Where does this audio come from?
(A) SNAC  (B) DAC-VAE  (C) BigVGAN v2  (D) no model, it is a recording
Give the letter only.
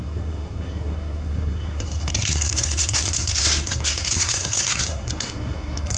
A